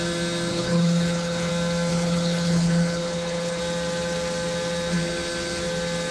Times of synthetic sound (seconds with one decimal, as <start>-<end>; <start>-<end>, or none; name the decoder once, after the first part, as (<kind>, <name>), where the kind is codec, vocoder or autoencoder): 0.5-1.5 (codec, HILCodec); 1.9-3.6